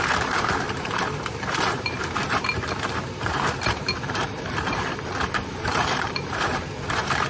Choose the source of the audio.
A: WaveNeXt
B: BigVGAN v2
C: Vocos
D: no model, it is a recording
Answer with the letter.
B